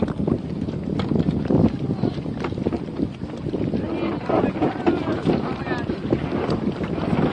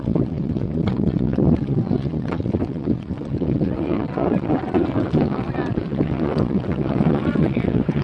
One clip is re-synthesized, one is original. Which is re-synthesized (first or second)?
second